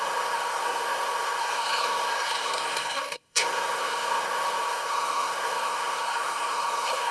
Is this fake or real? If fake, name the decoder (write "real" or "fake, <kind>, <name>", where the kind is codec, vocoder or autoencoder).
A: fake, codec, SNAC